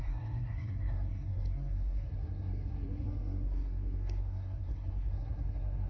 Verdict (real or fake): fake